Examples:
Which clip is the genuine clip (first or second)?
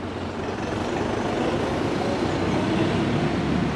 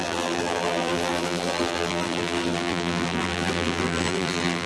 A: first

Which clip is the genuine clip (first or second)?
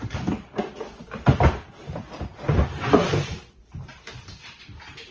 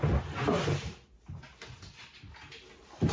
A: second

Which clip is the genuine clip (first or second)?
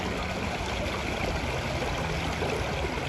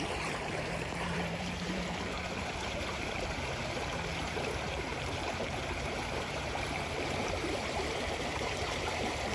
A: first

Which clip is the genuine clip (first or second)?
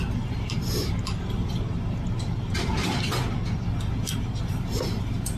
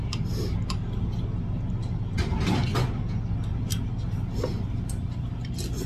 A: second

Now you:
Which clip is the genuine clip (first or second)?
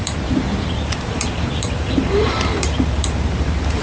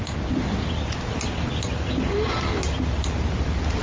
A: second